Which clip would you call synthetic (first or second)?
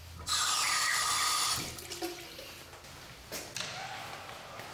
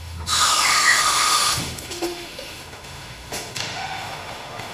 second